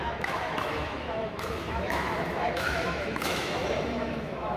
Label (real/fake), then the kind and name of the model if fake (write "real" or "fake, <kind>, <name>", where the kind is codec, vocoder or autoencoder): fake, autoencoder, DAC-VAE